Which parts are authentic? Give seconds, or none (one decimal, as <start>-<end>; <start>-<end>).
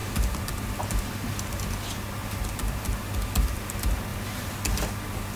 1.0-2.2; 3.0-5.4